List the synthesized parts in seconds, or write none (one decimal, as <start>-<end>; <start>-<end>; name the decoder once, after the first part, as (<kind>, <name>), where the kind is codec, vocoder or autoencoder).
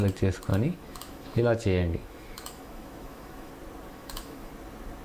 0.5-3.5 (autoencoder, DAC-VAE); 3.9-4.5